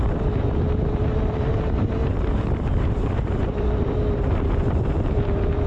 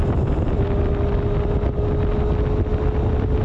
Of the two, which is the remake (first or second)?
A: first